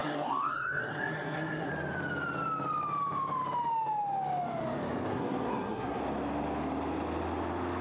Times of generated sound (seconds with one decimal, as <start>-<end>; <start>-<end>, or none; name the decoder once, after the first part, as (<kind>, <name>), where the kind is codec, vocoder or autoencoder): 0.0-1.7 (codec, SNAC); 5.1-6.0